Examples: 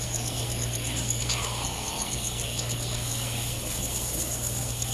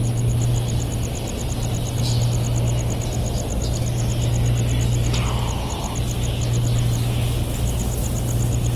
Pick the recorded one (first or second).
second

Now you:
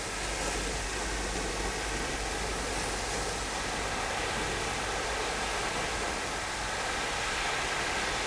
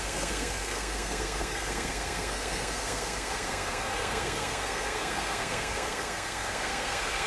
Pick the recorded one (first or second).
first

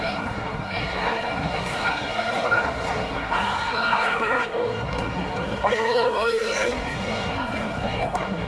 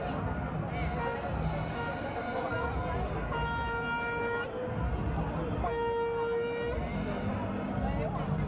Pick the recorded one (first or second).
second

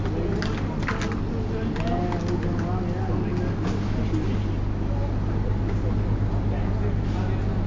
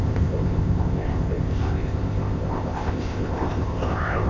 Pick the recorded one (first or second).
first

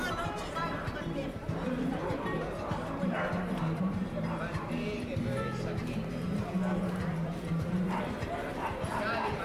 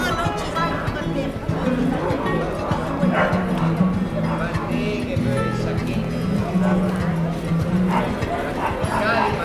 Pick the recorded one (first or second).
second